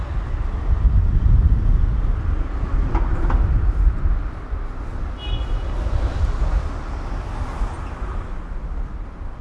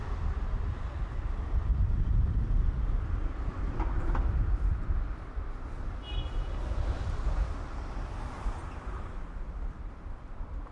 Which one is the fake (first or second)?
second